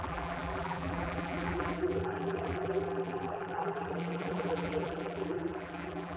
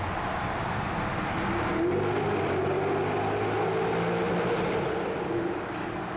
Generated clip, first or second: first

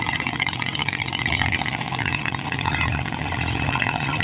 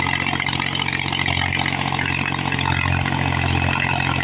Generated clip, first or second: first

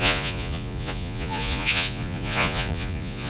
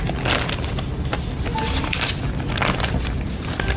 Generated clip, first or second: first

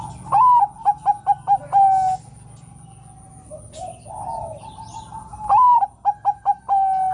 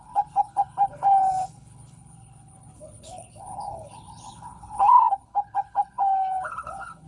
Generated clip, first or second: second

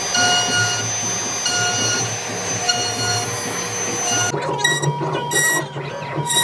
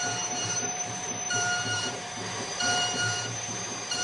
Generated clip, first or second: second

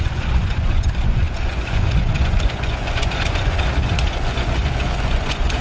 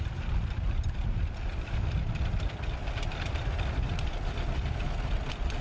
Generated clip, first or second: first